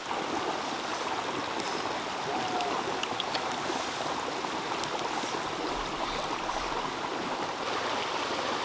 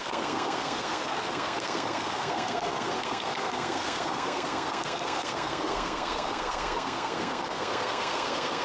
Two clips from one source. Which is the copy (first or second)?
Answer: second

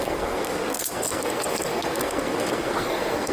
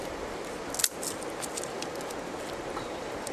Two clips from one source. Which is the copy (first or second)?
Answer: first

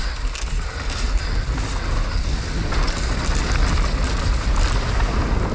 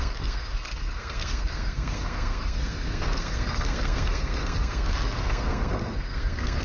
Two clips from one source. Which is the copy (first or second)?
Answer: second